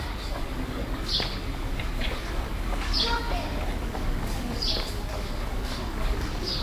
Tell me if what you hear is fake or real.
fake